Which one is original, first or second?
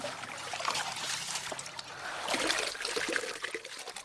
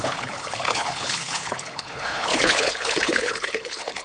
first